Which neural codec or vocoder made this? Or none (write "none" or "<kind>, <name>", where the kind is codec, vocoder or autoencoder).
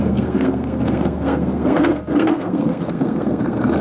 codec, SNAC